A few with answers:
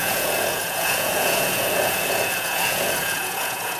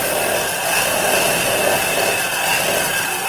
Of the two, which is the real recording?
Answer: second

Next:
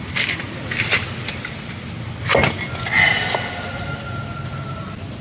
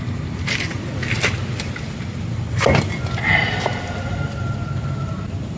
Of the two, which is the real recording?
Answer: first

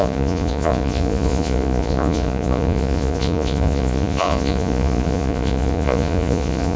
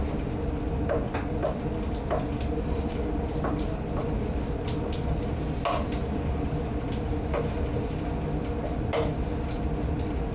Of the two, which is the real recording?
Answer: second